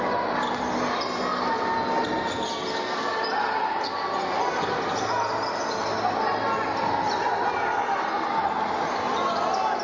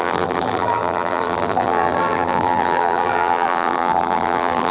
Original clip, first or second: first